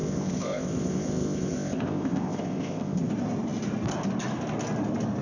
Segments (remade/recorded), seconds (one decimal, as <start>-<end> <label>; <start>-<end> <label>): 0.0-3.1 remade; 3.1-5.2 recorded